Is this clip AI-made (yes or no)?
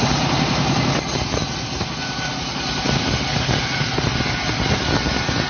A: no